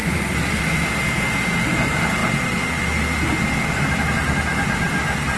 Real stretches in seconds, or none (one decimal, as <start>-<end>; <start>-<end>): 0.6-5.4